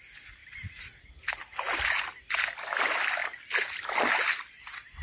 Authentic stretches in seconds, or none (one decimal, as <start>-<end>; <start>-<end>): 0.0-0.4; 1.1-5.0